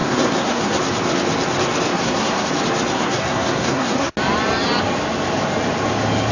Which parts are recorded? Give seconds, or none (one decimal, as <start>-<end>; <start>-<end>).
0.8-1.9; 2.5-2.9; 4.1-6.3